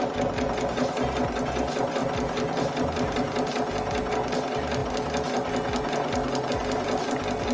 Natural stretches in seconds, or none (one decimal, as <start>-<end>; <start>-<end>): 0.0-7.5